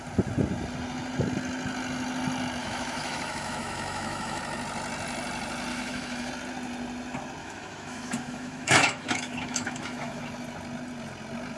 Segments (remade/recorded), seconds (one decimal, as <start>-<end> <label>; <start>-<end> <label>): 0.0-2.6 recorded; 2.6-4.4 remade; 4.4-5.7 recorded; 5.7-6.3 remade; 6.3-7.4 recorded; 7.4-10.2 remade; 10.2-11.6 recorded